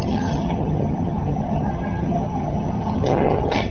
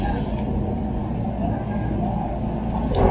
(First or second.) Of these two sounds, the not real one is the first